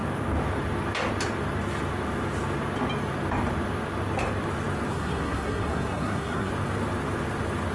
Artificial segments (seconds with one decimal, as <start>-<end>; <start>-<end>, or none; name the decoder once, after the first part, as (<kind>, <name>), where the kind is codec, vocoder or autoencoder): 4.9-6.5 (codec, SNAC)